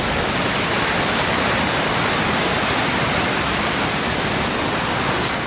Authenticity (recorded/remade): recorded